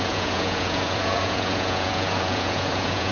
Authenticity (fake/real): fake